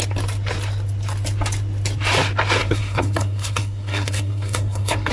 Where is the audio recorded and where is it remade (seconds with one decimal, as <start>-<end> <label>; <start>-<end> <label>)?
0.0-2.6 recorded; 2.6-5.1 remade